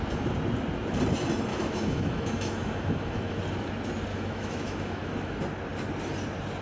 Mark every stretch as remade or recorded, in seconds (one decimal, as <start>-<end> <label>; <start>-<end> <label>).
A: 0.0-1.5 recorded; 1.5-3.4 remade; 3.4-4.1 recorded; 4.1-5.4 remade; 5.4-6.6 recorded